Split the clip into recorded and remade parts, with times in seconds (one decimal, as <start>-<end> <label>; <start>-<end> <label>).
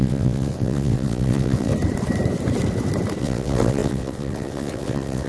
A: 0.0-1.7 remade; 1.7-3.2 recorded; 3.2-5.3 remade